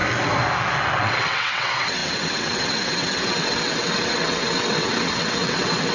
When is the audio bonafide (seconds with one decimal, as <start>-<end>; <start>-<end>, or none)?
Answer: 0.0-1.0